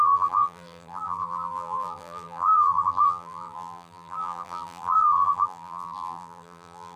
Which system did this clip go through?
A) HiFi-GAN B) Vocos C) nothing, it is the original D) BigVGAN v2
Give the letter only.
D